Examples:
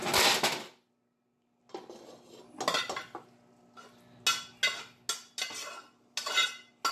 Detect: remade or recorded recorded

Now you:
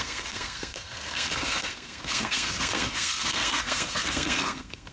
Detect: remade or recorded remade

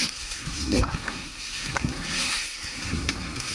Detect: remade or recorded remade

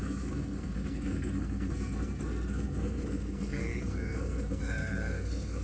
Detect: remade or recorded remade